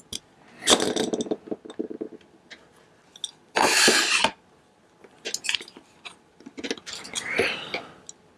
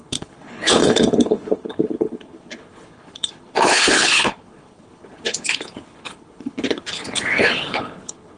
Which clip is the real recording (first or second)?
first